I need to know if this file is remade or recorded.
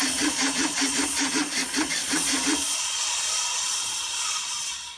remade